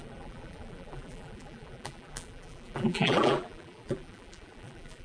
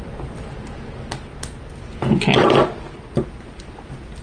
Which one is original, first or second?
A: second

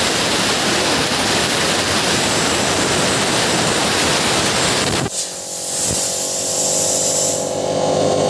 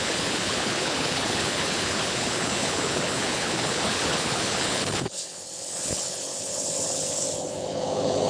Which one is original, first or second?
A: first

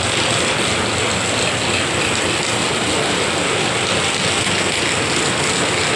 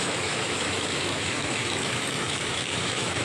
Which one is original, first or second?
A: first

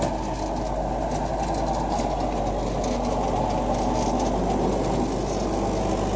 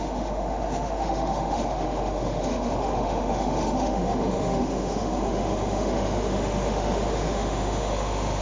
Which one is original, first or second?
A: first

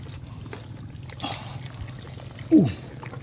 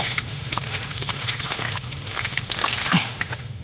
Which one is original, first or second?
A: first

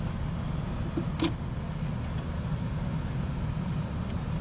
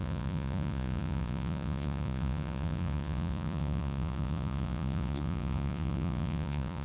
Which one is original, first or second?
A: first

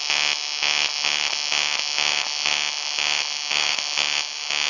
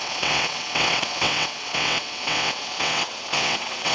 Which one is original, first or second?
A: first